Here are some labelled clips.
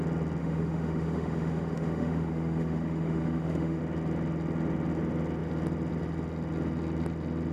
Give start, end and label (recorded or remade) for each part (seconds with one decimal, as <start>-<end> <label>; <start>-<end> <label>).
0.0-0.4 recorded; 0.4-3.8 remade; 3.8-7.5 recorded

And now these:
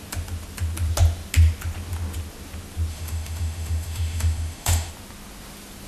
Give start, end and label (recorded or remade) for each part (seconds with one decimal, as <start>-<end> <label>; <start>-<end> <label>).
0.0-2.9 recorded; 2.9-4.9 remade; 4.9-5.9 recorded

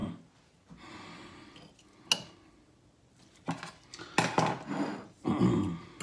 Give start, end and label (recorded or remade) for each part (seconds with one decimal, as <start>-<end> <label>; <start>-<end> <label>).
0.0-6.0 recorded